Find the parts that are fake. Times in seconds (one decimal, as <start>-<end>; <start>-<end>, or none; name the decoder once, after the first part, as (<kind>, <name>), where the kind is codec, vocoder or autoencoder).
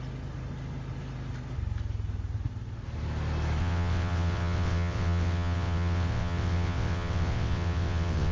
3.6-8.3 (vocoder, WaveNeXt)